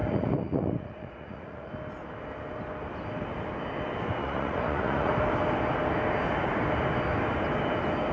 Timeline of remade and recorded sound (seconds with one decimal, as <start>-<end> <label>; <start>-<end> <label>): 0.0-1.7 remade; 1.7-4.2 recorded; 4.2-5.1 remade; 5.1-8.1 recorded